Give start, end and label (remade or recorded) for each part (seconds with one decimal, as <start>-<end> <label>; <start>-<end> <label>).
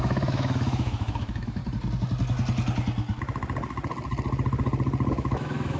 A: 0.0-1.6 remade; 1.6-5.1 recorded; 5.1-5.8 remade